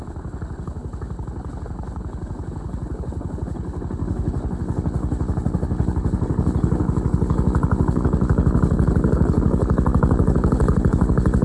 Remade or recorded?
remade